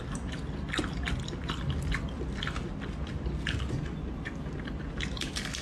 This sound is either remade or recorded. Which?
recorded